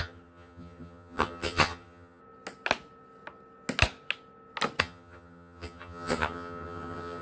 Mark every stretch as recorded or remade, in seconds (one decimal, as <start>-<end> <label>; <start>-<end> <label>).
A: 0.0-2.2 remade; 2.2-4.8 recorded; 4.8-7.2 remade

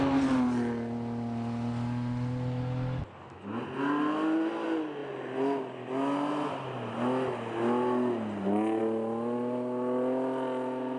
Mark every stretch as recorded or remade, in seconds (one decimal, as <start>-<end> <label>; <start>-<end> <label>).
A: 0.0-11.0 recorded

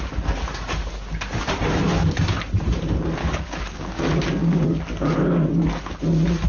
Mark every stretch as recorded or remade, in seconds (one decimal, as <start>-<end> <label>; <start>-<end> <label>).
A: 0.0-0.8 recorded; 0.8-1.5 remade; 1.5-3.2 recorded; 3.2-4.0 remade; 4.0-4.4 recorded; 4.4-5.5 remade; 5.5-6.5 recorded